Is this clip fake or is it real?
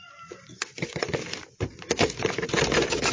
fake